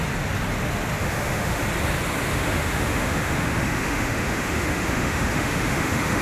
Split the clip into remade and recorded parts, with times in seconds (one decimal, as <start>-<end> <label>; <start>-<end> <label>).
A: 0.0-1.0 recorded; 1.0-1.6 remade; 1.6-2.3 recorded; 2.3-6.2 remade